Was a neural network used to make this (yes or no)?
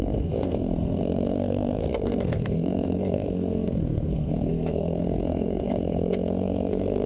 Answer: yes